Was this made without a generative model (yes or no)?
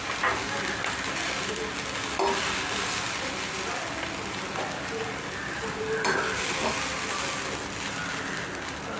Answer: yes